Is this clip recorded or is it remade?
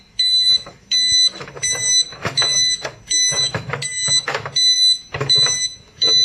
remade